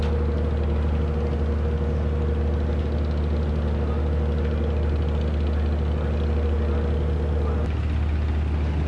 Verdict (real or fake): real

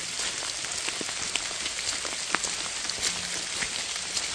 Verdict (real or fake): real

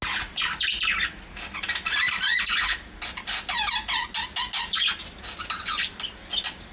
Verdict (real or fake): real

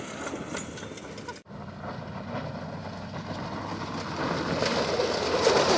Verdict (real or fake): real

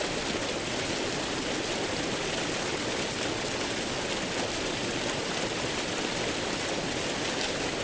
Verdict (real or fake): real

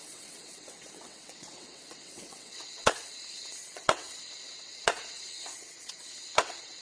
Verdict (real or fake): fake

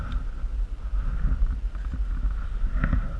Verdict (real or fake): real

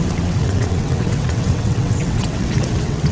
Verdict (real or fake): fake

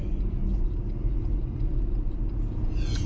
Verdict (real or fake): real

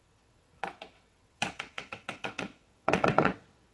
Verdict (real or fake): fake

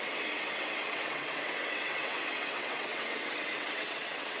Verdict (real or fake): fake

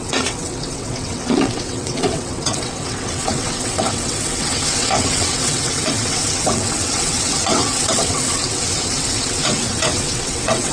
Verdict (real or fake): fake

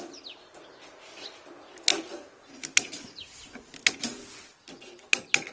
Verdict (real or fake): real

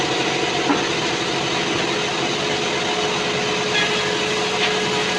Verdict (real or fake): real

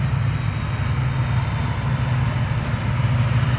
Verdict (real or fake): real